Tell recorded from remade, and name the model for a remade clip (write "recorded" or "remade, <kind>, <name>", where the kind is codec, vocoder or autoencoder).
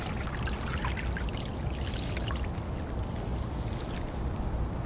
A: recorded